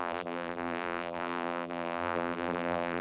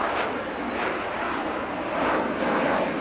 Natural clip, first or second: second